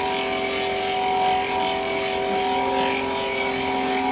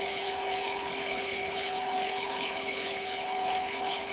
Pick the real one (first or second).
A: first